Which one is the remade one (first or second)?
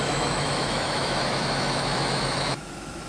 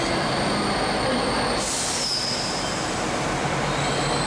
first